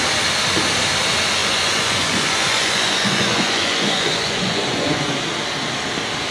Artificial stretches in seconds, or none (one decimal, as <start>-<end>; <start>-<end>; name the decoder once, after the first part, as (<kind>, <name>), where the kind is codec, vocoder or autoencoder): 1.4-5.1 (vocoder, Vocos)